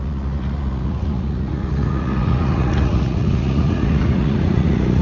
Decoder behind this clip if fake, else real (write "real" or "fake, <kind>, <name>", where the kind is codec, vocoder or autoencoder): fake, vocoder, Vocos